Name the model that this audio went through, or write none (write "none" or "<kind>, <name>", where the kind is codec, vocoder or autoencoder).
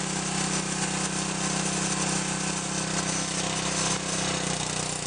none